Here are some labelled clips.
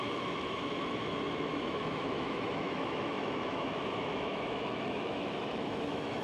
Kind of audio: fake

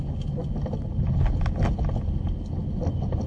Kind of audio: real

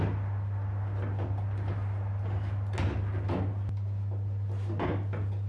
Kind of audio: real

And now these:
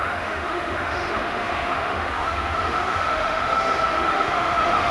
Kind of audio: fake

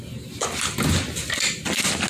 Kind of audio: real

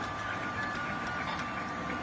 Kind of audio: real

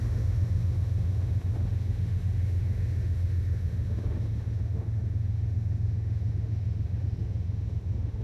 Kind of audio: fake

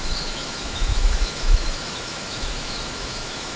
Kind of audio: fake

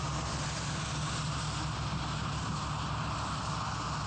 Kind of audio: real